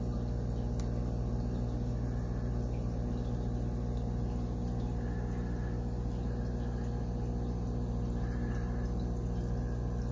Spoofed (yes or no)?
no